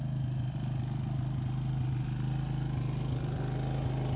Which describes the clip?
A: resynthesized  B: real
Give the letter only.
B